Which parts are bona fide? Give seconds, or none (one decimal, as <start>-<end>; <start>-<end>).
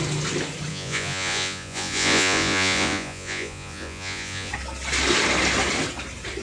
0.0-0.7; 4.5-6.4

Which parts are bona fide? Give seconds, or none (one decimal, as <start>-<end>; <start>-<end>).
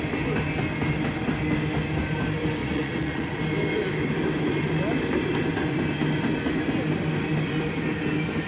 0.0-2.6; 3.4-8.5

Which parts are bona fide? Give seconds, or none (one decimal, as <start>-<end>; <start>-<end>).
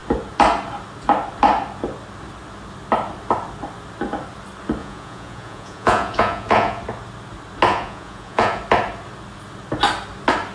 0.0-4.8; 6.8-7.7; 8.6-10.5